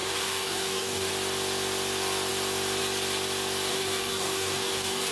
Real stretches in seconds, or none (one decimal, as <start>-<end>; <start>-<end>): 1.1-3.7